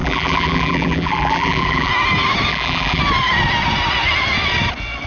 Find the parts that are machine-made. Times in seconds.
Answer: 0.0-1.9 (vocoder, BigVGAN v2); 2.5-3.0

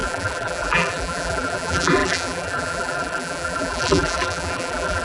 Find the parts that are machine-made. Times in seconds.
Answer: 0.0-5.0 (vocoder, BigVGAN v2)